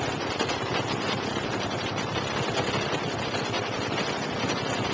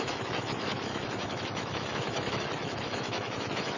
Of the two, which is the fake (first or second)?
second